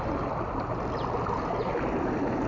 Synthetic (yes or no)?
no